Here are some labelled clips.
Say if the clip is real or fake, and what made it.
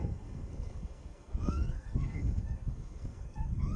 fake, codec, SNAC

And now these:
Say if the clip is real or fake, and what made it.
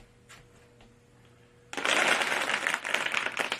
real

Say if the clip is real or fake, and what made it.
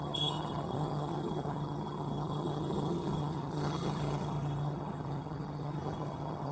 fake, vocoder, HiFi-GAN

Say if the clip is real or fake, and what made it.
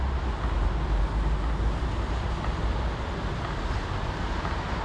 real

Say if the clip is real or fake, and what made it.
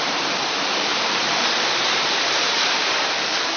fake, vocoder, BigVGAN v2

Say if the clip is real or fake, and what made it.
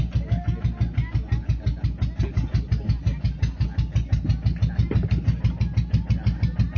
real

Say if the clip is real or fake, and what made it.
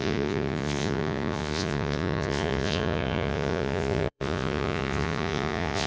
fake, vocoder, Vocos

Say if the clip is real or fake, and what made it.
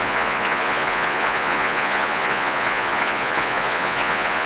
fake, vocoder, Vocos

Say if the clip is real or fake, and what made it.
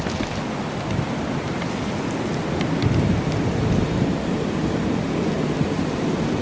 real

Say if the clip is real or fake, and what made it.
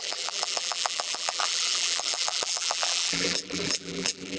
fake, vocoder, BigVGAN v2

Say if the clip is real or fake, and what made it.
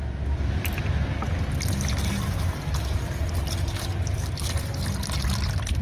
real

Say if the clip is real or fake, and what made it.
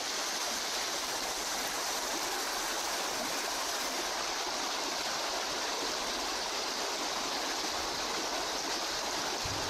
real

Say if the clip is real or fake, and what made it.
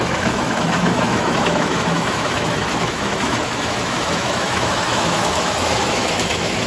fake, autoencoder, DAC-VAE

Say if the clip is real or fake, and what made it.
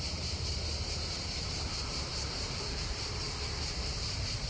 fake, vocoder, BigVGAN v2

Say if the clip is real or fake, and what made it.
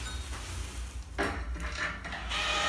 real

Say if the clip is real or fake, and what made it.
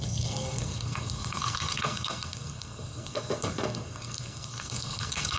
fake, codec, SNAC